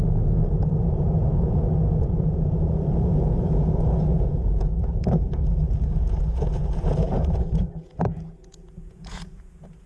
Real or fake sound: fake